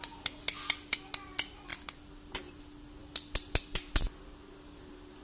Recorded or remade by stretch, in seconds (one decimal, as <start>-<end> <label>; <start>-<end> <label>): 0.0-5.2 recorded